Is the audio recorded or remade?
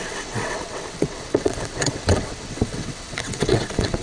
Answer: remade